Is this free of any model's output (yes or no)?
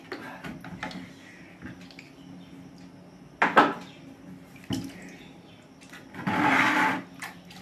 yes